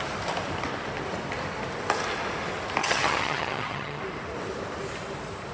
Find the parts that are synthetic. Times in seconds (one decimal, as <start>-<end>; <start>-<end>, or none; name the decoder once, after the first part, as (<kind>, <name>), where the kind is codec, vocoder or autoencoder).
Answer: 2.8-4.0 (vocoder, HiFi-GAN)